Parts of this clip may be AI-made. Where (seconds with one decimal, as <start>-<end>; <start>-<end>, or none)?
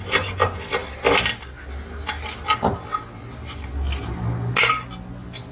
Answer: none